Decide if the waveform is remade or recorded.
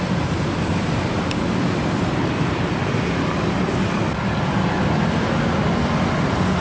remade